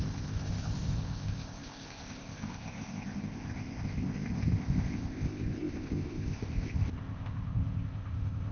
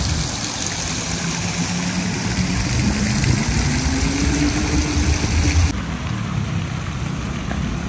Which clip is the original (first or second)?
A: second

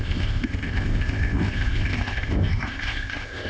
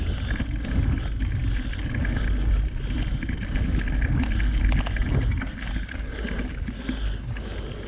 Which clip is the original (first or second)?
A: second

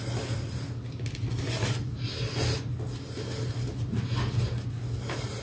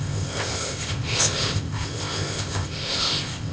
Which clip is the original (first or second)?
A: first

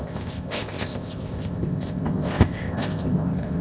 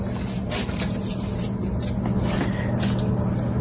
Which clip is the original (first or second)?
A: second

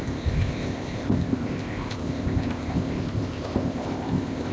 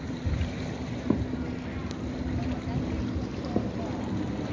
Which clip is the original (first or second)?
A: second